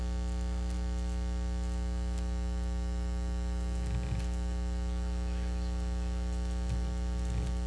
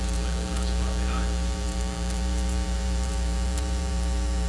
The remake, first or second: second